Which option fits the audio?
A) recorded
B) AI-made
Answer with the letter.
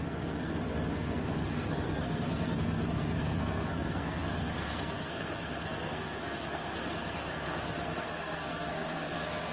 B